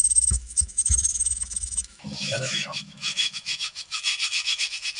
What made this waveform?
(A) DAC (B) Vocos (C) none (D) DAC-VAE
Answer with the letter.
D